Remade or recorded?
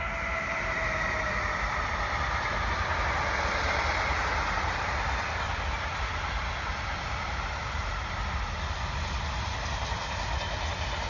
recorded